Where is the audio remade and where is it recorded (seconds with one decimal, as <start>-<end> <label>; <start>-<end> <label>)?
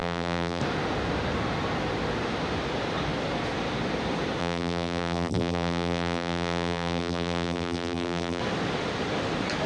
0.0-0.6 remade; 0.6-4.4 recorded; 4.4-8.4 remade; 8.4-9.7 recorded